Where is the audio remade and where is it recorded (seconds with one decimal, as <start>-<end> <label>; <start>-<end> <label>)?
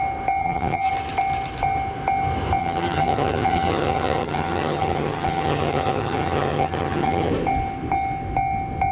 0.0-0.4 recorded; 0.4-0.9 remade; 0.9-2.6 recorded; 2.6-7.3 remade; 7.3-8.9 recorded